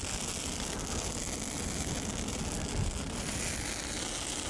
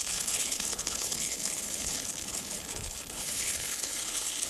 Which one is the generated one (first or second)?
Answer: second